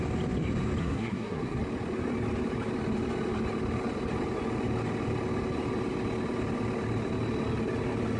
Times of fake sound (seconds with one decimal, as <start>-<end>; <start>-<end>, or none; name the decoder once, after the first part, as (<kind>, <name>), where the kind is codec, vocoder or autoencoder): 0.8-1.6 (codec, SNAC)